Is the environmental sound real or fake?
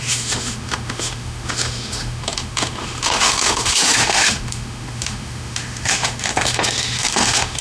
fake